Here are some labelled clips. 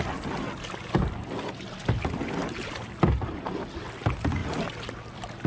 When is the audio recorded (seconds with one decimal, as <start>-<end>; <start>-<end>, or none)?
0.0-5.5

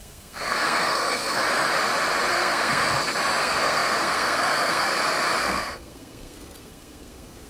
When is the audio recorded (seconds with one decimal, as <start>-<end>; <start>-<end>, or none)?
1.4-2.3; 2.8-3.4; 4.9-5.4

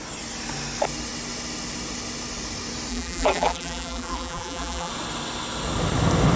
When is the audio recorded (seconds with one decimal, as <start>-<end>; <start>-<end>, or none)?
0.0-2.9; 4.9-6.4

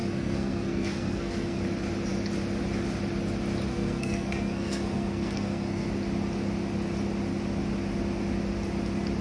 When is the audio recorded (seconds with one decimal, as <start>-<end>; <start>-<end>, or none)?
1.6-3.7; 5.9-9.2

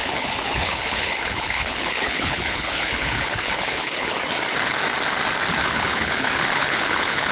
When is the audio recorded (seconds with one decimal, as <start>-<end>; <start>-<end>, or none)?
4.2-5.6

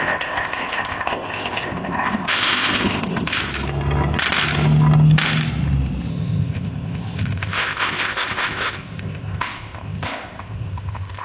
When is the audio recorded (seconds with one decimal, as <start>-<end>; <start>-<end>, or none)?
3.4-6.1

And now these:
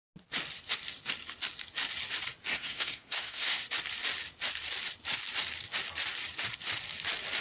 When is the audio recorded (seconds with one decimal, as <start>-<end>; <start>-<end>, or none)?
0.0-2.5; 3.6-7.4